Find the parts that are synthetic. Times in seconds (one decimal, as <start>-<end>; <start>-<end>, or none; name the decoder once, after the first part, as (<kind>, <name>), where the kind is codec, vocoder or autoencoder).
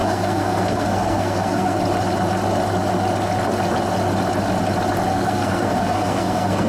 0.0-1.8 (codec, SNAC); 5.1-6.7